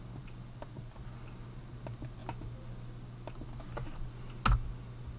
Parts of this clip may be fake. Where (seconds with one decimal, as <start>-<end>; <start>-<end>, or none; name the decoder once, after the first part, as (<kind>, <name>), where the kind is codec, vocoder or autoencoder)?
none